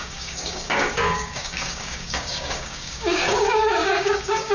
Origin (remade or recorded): remade